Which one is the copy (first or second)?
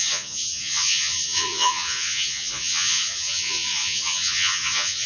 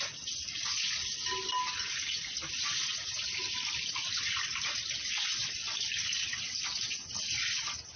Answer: first